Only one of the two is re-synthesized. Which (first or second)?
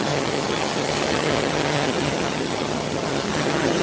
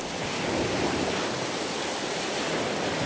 first